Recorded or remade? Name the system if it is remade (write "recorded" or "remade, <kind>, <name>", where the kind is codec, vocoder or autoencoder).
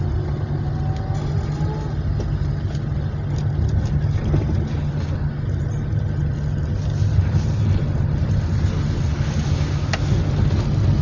recorded